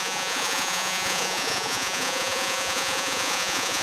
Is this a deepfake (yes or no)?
yes